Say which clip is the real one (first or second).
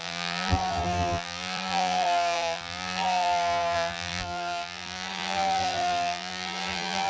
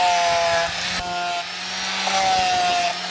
second